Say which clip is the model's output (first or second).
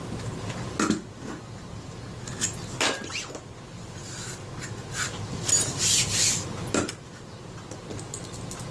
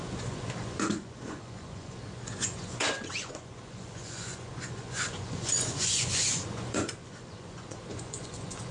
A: second